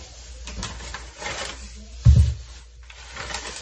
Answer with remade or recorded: recorded